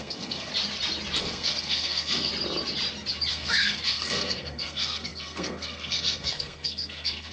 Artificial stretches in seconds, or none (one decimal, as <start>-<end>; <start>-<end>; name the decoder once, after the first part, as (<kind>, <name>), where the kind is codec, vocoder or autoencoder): 0.0-0.5 (codec, SNAC); 1.2-2.3; 3.3-7.3

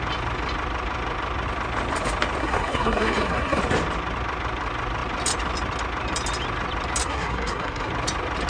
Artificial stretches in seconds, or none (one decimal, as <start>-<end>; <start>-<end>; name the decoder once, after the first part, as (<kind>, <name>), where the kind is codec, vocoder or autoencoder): 2.4-3.6 (codec, SNAC); 7.0-7.9

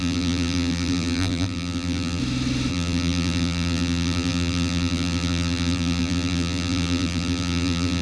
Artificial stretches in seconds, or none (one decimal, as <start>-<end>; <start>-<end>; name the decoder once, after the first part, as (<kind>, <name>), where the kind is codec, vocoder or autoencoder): 0.0-2.2 (vocoder, BigVGAN v2); 2.7-8.0

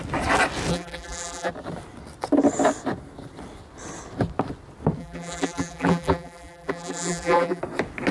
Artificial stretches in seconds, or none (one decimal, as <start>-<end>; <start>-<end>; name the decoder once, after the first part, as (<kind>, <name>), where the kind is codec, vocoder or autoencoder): 0.7-1.5 (vocoder, BigVGAN v2); 5.0-7.6

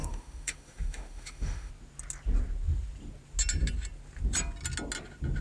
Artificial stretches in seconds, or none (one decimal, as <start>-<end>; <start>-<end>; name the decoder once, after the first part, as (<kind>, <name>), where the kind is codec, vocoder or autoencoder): 0.0-1.7 (autoencoder, DAC-VAE)

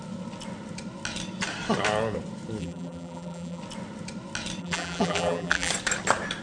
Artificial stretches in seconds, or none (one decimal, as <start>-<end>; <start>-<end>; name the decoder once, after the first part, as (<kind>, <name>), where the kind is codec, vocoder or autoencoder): 2.6-3.6 (vocoder, BigVGAN v2); 4.6-5.7

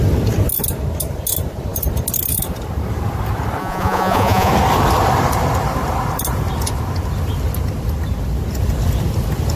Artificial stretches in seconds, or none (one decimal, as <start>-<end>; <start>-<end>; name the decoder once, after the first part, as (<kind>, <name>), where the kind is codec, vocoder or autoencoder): 3.6-4.5 (vocoder, Vocos)